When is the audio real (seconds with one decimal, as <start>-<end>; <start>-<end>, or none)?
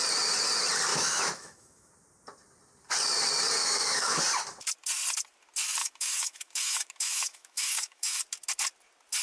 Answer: 0.0-0.9; 1.9-3.6; 4.2-5.8; 8.2-9.2